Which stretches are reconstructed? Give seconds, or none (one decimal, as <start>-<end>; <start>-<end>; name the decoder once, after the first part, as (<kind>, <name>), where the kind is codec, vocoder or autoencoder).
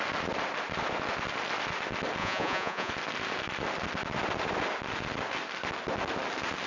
2.2-2.9 (vocoder, Vocos)